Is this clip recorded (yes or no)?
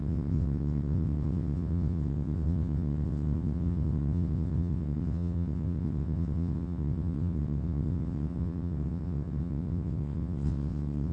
no